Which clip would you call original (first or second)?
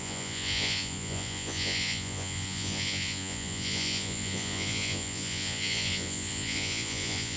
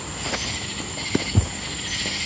second